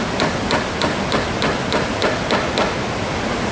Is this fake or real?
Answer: real